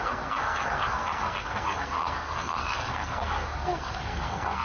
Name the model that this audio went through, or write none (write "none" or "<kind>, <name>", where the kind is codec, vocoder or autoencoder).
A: codec, SNAC